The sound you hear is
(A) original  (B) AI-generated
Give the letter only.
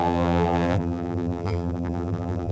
B